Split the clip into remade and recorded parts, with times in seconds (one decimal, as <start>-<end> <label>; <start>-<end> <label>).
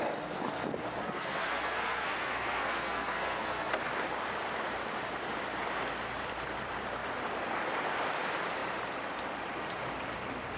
0.0-1.0 recorded; 1.0-3.7 remade; 3.7-10.6 recorded